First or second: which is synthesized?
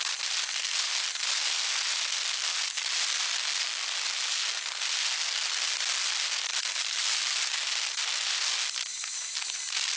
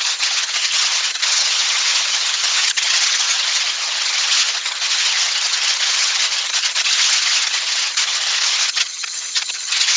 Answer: second